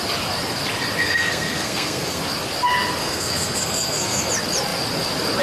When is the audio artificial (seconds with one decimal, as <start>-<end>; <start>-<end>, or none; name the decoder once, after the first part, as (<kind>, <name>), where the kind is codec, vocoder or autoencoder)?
1.0-2.2 (codec, SNAC); 3.0-4.3